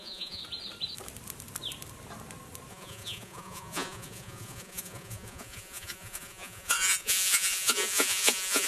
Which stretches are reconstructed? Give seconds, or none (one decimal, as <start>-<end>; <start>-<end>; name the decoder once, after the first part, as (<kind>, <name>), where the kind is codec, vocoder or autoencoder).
0.0-0.4 (vocoder, Vocos); 2.7-8.7